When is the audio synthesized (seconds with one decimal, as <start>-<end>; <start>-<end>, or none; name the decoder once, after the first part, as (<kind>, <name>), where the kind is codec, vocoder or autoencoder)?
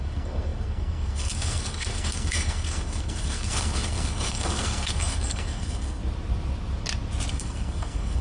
0.0-6.0 (codec, SNAC); 7.3-8.2